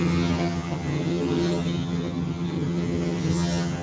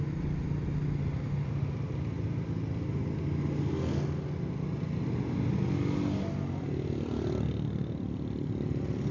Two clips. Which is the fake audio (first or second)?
first